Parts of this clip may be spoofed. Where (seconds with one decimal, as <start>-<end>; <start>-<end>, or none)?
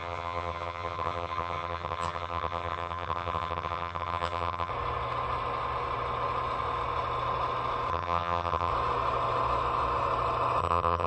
0.0-4.7; 7.9-8.7; 10.6-11.1